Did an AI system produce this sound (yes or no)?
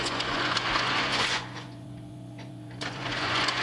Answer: yes